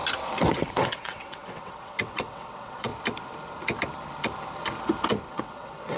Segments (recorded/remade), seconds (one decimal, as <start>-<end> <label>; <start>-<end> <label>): 0.0-0.8 recorded; 0.8-2.9 remade; 2.9-5.3 recorded; 5.3-6.0 remade